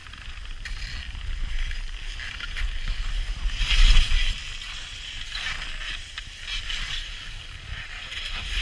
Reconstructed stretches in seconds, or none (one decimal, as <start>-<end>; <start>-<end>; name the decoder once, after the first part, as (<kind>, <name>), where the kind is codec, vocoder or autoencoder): none